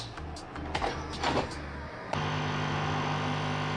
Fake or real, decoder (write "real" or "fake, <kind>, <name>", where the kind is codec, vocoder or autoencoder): real